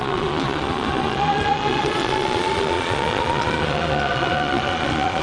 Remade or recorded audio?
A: remade